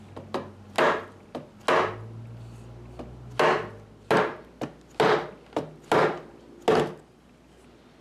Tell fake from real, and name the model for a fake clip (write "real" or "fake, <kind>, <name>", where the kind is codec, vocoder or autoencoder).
real